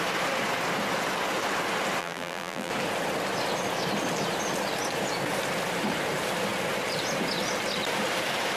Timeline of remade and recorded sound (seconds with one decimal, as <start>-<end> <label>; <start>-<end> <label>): 0.0-2.0 recorded; 2.0-2.7 remade; 2.7-8.6 recorded